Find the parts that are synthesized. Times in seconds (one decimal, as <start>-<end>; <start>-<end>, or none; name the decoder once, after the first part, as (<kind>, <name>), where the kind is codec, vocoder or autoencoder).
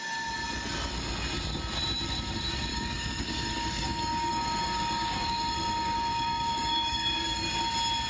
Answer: 2.7-7.5 (codec, DAC)